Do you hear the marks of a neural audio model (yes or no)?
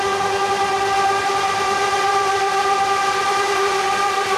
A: no